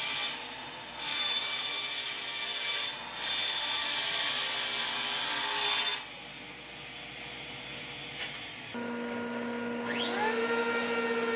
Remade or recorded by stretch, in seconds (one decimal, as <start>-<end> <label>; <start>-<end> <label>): 0.0-1.1 recorded; 1.1-1.7 remade; 1.7-11.4 recorded